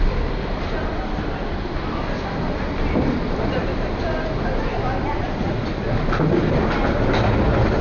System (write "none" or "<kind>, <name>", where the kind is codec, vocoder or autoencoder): none